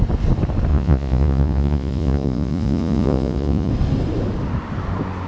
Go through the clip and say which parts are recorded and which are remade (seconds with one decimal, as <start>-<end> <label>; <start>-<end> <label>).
0.0-0.7 recorded; 0.7-3.7 remade; 3.7-5.3 recorded